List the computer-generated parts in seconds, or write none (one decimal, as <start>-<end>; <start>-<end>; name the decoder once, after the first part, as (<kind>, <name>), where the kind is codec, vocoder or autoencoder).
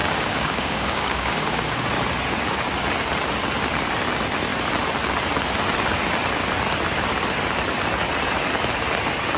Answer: 0.0-1.9 (codec, DAC)